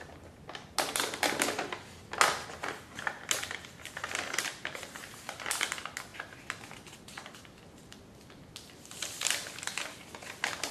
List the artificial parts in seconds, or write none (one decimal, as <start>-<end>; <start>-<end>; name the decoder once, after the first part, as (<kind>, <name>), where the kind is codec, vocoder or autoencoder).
none